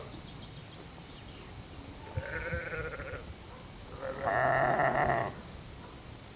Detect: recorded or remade recorded